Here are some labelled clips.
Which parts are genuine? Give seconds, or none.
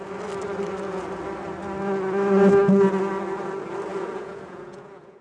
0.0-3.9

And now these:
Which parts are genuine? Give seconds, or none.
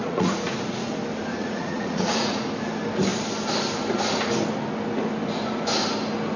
0.9-1.3; 2.5-6.4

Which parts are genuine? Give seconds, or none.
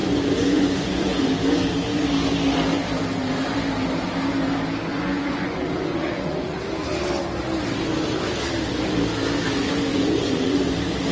1.2-4.9; 6.6-9.9; 10.7-11.1